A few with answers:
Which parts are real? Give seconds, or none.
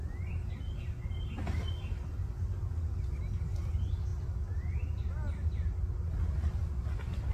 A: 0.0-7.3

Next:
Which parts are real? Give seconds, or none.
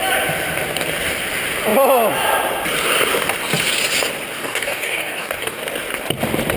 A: 0.0-4.4; 5.6-6.6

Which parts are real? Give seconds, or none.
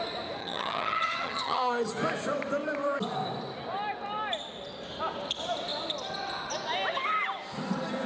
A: 0.0-0.4; 1.9-8.1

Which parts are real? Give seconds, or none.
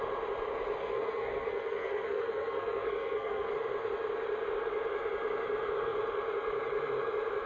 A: 0.0-0.8; 3.5-7.5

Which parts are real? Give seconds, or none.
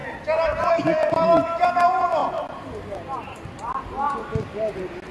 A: 0.0-5.1